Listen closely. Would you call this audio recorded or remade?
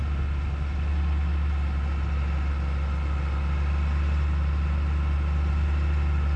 recorded